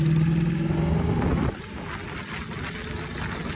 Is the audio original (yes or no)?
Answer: yes